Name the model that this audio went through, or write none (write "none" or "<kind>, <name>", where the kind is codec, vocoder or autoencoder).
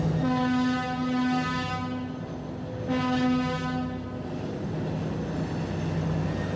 none